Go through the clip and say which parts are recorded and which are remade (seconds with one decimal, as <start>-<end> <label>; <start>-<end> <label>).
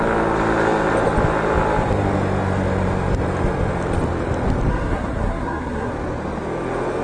0.0-4.7 recorded; 4.7-5.9 remade; 5.9-7.0 recorded